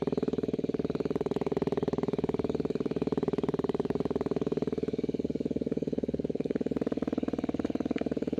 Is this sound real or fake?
fake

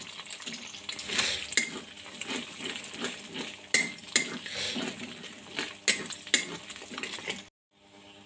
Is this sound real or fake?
real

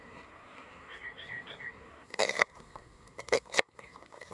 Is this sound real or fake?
fake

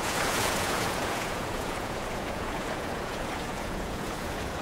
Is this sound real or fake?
fake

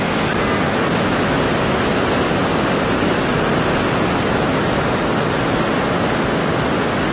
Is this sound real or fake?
real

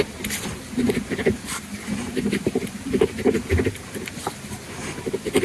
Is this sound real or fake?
real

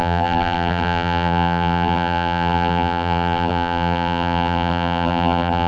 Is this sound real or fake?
fake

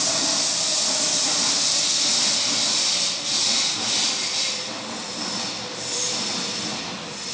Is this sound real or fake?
real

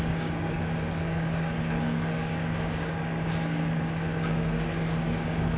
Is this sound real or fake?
fake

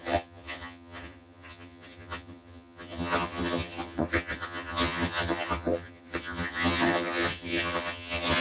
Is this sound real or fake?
fake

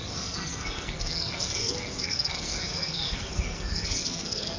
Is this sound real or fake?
fake